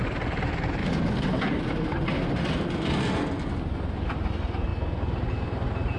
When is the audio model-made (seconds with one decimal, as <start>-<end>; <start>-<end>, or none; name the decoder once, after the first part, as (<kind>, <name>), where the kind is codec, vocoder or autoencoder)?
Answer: 0.8-3.5 (vocoder, BigVGAN v2)